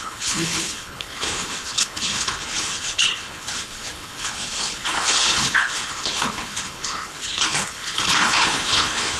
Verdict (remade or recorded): remade